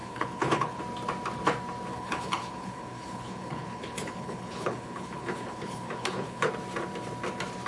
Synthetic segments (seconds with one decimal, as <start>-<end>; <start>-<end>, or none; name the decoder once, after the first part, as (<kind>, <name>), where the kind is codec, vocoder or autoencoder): 0.0-0.8 (codec, HILCodec); 1.9-6.5